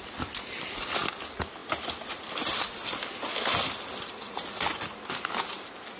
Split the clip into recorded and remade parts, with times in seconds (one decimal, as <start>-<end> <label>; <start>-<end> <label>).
0.0-6.0 recorded